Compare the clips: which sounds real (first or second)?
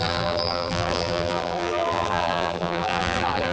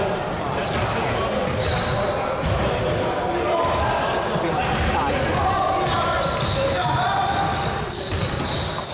second